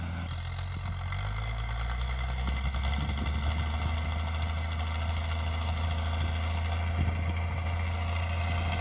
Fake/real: real